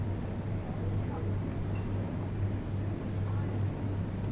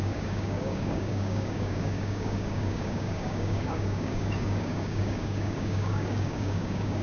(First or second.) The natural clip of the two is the first